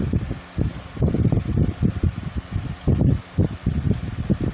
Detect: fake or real real